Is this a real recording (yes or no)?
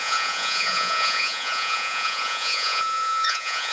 no